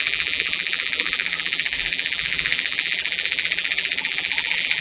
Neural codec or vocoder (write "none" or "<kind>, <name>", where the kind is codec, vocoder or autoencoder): vocoder, BigVGAN v2